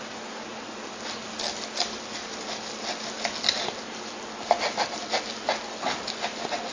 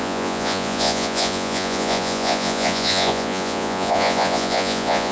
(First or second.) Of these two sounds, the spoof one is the second